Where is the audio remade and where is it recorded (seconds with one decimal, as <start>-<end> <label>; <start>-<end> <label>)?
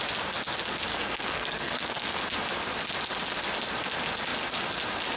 0.0-0.9 recorded; 0.9-2.2 remade; 2.2-5.2 recorded